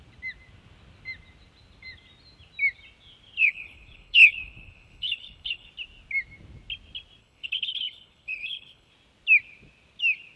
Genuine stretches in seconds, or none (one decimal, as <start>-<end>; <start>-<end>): 0.0-3.4; 5.7-7.2; 8.9-10.4